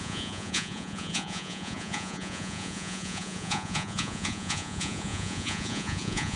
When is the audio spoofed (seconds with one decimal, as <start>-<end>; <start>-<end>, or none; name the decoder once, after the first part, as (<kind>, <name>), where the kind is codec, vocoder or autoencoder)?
0.0-6.4 (vocoder, Vocos)